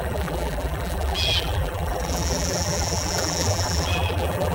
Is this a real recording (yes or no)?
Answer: no